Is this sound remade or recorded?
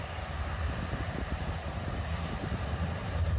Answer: remade